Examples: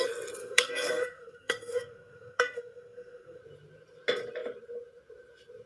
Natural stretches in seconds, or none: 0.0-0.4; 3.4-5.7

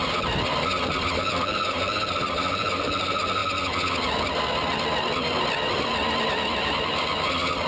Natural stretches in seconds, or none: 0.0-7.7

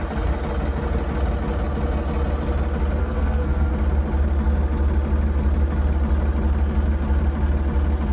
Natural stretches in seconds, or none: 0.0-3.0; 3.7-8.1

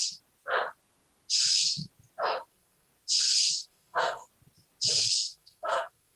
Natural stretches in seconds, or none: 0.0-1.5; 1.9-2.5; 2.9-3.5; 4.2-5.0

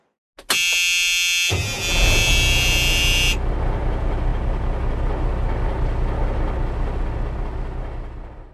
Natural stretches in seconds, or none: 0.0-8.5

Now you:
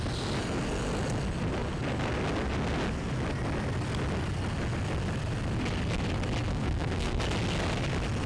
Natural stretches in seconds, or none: 0.0-6.5; 7.2-8.3

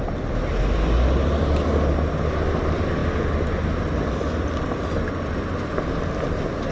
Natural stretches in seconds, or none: 0.0-6.7

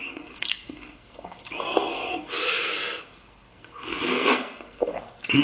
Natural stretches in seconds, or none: none